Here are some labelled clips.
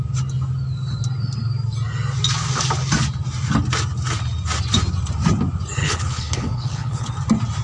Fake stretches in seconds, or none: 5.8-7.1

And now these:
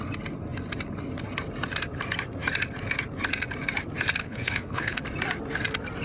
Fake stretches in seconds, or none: 4.2-5.0

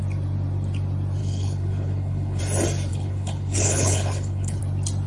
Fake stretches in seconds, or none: 1.2-2.4; 2.9-4.6

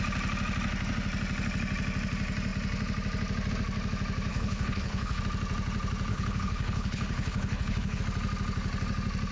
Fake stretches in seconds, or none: 4.3-5.2; 6.1-8.0